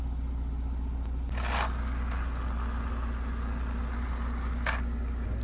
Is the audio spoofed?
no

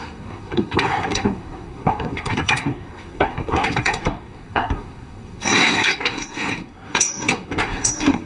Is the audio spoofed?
yes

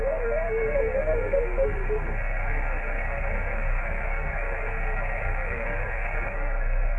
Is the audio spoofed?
yes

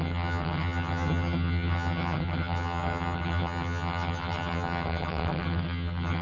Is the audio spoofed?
yes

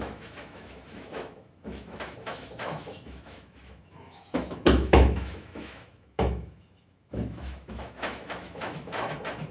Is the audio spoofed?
yes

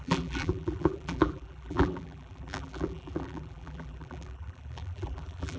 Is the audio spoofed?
yes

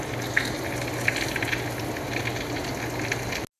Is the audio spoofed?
no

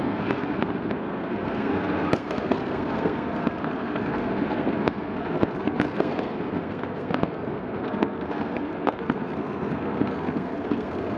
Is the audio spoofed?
yes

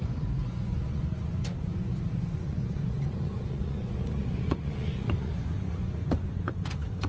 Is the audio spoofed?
yes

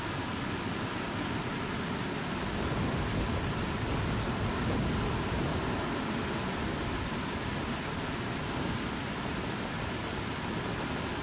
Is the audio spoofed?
no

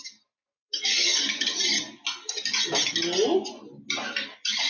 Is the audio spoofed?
no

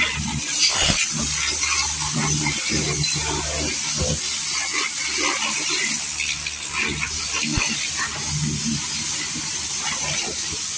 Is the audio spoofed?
no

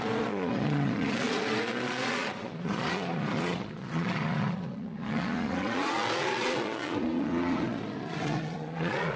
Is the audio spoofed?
yes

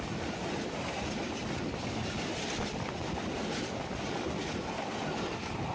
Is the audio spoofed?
no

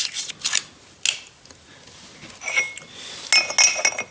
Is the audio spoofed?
no